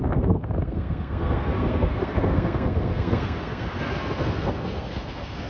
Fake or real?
fake